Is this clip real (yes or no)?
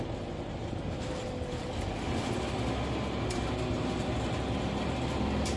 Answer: yes